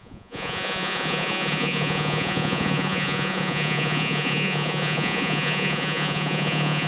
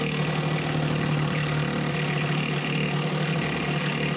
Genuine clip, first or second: second